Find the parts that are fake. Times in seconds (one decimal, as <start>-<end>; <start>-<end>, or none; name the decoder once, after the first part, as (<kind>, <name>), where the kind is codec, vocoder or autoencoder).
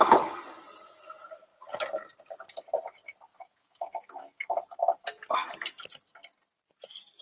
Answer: 3.3-4.6 (autoencoder, DAC-VAE)